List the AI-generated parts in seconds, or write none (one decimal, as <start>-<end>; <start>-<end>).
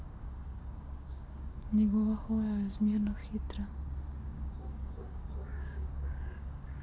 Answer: 0.0-3.2; 4.2-6.8